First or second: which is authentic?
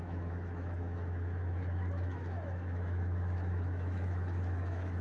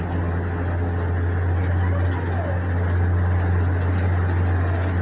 second